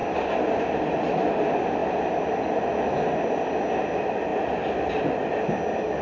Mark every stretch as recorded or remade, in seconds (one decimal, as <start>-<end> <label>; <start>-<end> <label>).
0.0-6.0 recorded